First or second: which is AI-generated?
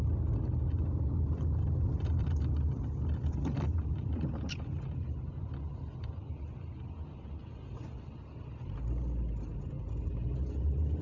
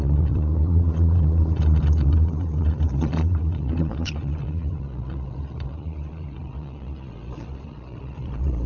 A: second